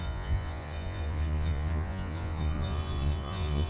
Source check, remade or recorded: remade